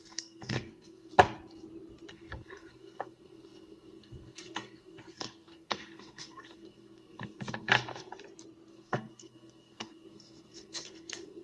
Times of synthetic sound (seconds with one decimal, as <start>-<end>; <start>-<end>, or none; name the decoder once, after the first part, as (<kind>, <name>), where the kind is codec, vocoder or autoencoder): 0.0-1.1 (codec, SNAC); 2.1-8.1; 8.7-11.4